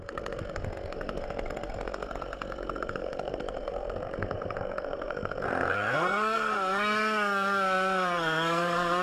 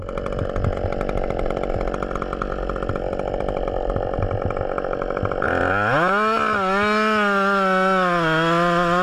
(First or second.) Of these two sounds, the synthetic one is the first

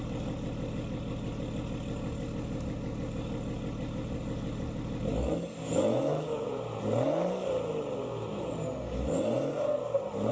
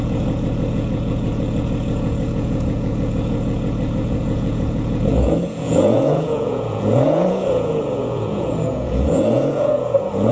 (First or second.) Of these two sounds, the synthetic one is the second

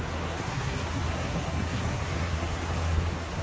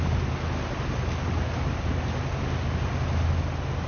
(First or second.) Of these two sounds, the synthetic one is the first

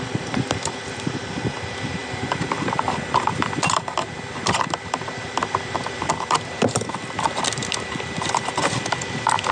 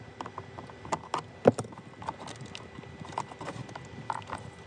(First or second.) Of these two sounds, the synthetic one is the first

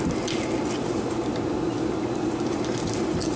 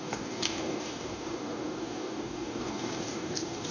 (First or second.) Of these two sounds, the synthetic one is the second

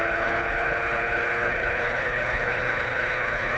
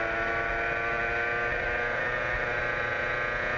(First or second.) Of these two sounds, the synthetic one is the first